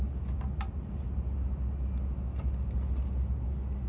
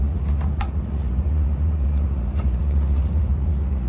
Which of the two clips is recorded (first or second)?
first